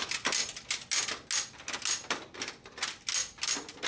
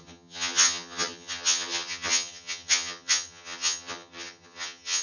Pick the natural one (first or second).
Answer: first